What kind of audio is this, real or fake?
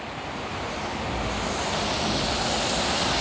real